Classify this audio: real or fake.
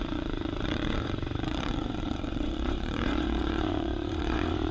fake